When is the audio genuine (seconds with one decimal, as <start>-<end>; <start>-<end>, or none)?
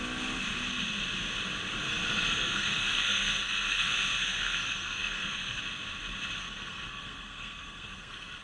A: 0.0-1.8; 5.6-6.4